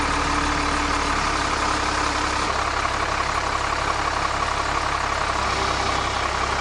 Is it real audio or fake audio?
real